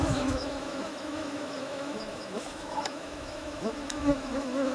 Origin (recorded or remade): remade